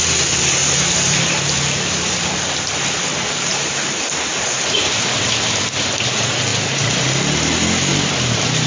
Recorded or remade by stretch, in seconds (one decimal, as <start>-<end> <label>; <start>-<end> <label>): 0.0-0.6 recorded; 0.6-2.3 remade; 2.3-3.1 recorded; 3.1-5.6 remade; 5.6-8.7 recorded